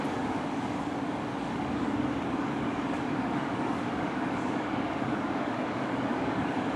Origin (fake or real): fake